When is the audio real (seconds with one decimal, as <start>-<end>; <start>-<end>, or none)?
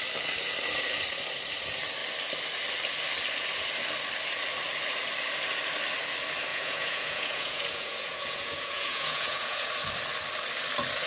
0.0-6.5; 9.7-11.1